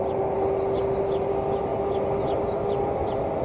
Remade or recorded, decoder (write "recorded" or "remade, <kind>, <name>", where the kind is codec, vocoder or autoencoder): recorded